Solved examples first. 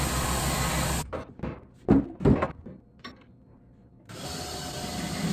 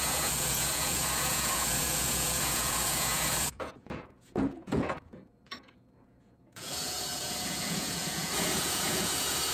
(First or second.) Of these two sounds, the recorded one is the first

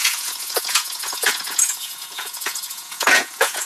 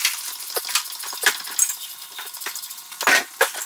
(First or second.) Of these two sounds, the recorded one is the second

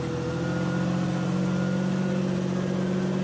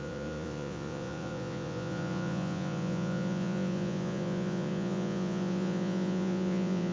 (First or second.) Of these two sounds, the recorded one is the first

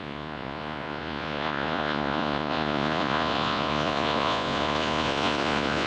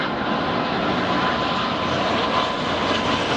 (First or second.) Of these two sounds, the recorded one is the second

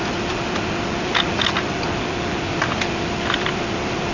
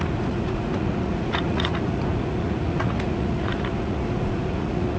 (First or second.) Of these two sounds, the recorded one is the first